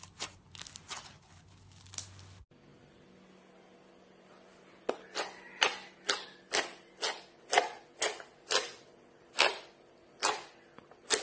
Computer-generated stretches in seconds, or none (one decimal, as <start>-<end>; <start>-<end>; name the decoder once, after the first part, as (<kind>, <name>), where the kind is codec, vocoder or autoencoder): none